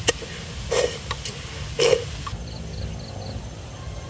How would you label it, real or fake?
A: real